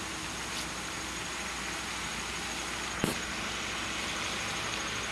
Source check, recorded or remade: recorded